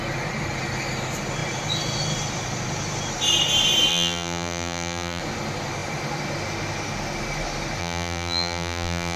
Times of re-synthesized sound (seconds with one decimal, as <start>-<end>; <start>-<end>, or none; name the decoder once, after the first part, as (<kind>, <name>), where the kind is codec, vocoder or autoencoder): 3.9-5.2 (vocoder, BigVGAN v2); 7.8-9.2